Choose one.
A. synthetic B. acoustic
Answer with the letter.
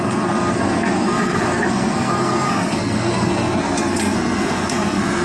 A